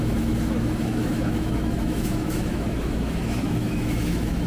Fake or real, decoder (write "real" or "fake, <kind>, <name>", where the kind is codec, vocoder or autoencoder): fake, autoencoder, DAC-VAE